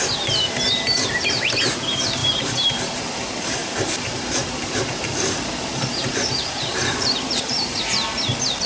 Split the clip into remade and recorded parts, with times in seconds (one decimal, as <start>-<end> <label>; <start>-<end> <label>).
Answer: 0.0-2.2 recorded; 2.2-2.9 remade; 2.9-3.6 recorded; 3.6-7.8 remade; 7.8-8.7 recorded